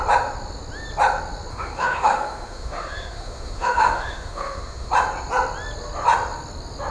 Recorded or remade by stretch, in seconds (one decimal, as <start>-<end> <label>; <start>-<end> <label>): 0.0-1.5 recorded; 1.5-4.9 remade; 4.9-6.9 recorded